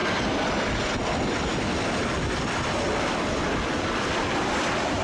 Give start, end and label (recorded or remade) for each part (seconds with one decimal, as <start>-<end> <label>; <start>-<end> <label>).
0.0-5.0 remade